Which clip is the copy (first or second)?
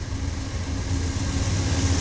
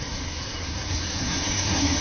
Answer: second